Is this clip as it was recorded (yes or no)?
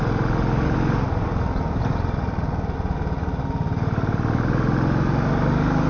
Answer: yes